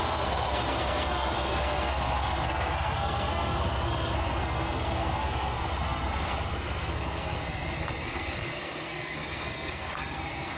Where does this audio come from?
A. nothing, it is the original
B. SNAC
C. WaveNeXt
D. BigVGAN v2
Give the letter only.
B